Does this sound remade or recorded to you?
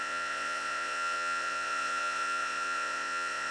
remade